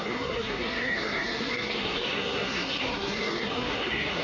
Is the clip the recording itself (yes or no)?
no